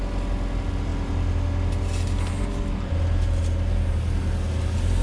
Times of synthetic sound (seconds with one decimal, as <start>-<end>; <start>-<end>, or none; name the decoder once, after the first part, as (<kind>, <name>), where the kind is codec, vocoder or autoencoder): none